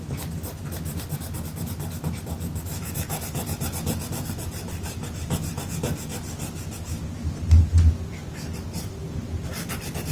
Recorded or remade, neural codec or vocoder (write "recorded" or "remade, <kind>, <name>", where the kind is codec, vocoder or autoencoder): recorded